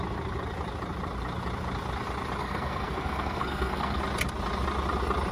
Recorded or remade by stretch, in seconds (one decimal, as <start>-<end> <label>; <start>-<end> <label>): 0.0-2.4 recorded; 2.4-4.0 remade; 4.0-5.3 recorded